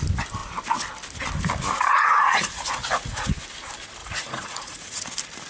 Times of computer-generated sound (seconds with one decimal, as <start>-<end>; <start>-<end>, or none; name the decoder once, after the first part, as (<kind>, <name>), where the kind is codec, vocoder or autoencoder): 1.9-3.3 (vocoder, Vocos); 4.0-5.0

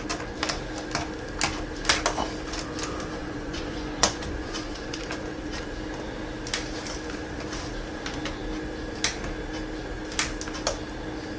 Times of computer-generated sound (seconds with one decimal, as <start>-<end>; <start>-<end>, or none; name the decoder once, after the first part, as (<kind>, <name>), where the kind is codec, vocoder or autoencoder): 3.2-5.0 (vocoder, Vocos)